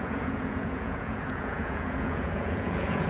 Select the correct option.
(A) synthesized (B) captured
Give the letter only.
A